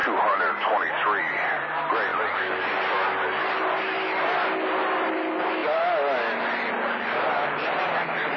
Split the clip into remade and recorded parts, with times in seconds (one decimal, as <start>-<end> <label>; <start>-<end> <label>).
0.0-8.4 recorded